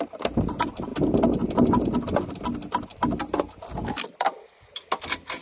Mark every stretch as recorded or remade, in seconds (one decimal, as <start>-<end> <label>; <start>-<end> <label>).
0.0-5.4 recorded